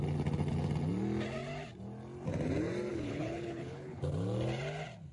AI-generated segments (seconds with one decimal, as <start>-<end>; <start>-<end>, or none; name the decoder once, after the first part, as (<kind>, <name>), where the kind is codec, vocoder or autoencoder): 2.9-4.0 (codec, HILCodec)